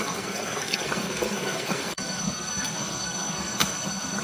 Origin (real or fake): fake